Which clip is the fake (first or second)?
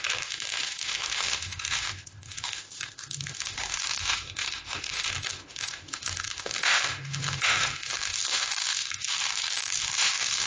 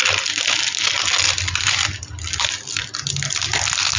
first